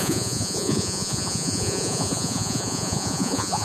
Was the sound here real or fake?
fake